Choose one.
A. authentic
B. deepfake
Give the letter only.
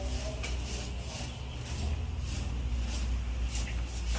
A